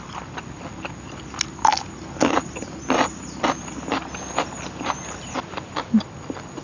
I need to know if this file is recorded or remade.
recorded